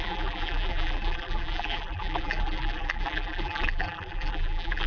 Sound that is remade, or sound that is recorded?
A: remade